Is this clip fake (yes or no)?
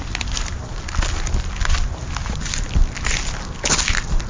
no